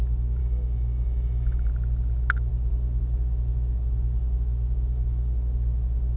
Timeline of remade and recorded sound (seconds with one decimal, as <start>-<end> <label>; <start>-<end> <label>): 0.0-0.4 recorded; 0.4-1.7 remade; 1.7-6.2 recorded